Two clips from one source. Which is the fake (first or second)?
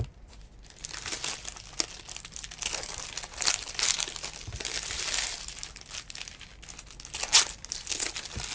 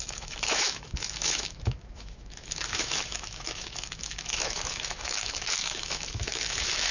second